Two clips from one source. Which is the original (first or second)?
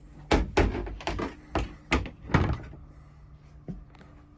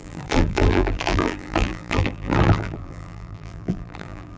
first